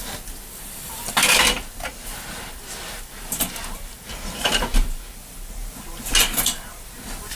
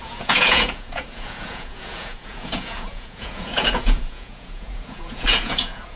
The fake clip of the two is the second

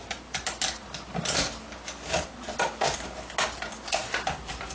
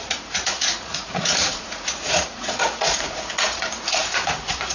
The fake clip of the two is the second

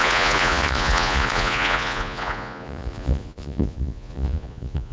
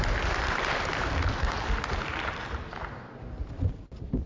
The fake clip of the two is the first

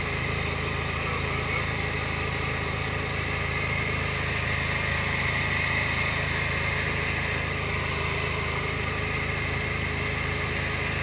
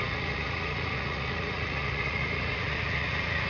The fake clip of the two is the second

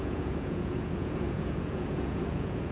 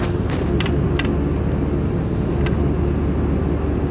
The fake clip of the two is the first